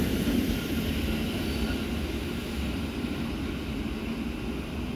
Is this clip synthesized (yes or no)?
no